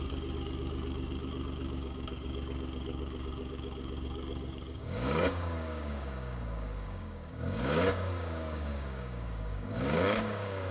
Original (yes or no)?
no